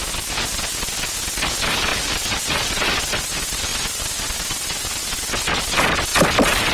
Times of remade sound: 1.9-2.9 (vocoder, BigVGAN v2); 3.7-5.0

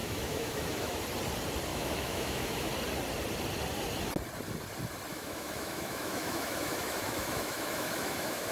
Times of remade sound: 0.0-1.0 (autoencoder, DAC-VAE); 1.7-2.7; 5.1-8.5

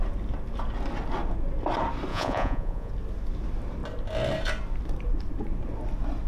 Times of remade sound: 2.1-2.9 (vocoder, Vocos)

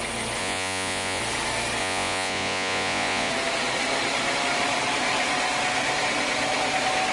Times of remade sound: 0.4-1.2 (vocoder, Vocos); 1.8-3.3

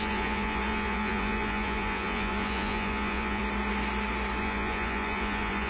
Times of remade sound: 0.0-3.4 (vocoder, Vocos); 4.4-5.7